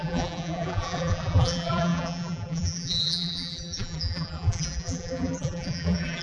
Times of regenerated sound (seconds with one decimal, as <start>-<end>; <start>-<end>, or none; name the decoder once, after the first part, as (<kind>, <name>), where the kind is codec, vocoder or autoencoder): 0.0-6.2 (vocoder, BigVGAN v2)